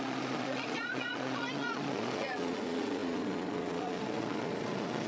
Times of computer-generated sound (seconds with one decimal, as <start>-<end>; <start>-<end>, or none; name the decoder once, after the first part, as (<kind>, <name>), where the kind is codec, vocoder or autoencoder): 0.0-5.1 (vocoder, Vocos)